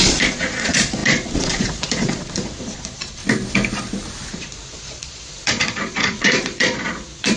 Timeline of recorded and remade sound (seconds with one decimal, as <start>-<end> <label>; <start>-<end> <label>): 0.0-3.2 remade; 3.2-4.3 recorded; 4.3-7.4 remade